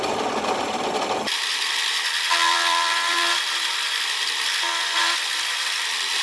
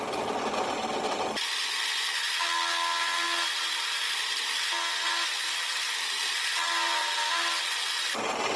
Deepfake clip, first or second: first